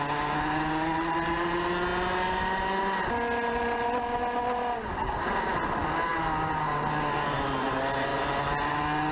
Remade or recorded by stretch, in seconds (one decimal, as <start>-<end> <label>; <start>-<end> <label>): 0.0-9.1 recorded